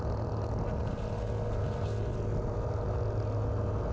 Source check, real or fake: real